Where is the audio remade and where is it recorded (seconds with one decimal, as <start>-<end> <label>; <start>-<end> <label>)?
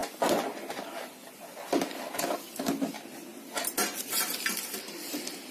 0.0-5.5 recorded